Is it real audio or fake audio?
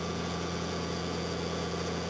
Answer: fake